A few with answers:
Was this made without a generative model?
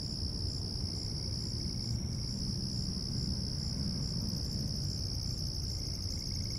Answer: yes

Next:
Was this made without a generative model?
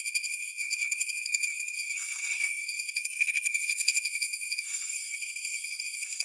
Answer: no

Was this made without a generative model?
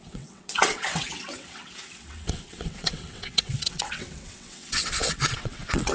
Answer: no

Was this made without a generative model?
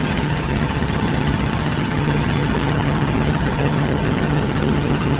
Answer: no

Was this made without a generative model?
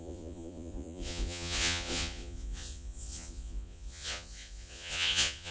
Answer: no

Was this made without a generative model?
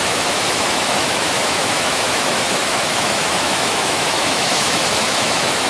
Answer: no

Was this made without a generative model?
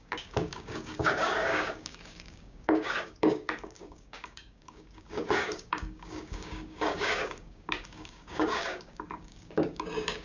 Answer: no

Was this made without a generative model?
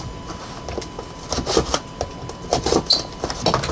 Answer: yes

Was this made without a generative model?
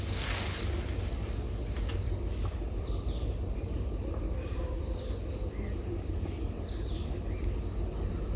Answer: yes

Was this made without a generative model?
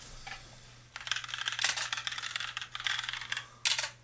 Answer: yes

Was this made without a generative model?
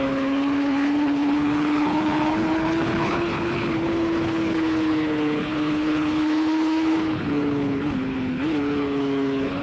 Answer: no